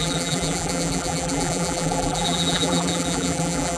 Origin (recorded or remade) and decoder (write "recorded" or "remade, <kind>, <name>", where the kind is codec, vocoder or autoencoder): remade, vocoder, BigVGAN v2